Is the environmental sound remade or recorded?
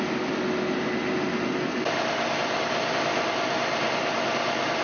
recorded